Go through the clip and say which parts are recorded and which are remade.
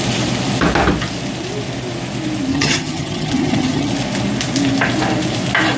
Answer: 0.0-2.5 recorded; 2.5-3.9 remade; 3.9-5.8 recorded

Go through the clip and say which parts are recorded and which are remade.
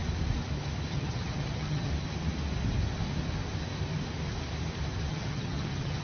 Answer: 0.0-0.9 recorded; 0.9-1.9 remade; 1.9-5.1 recorded; 5.1-6.0 remade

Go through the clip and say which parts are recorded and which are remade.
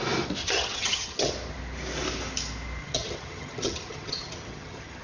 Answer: 0.0-0.4 recorded; 0.4-1.3 remade; 1.3-2.8 recorded; 2.8-5.0 remade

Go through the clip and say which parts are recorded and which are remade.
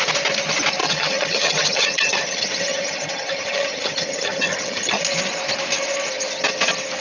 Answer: 0.0-0.8 recorded; 0.8-5.0 remade; 5.0-7.0 recorded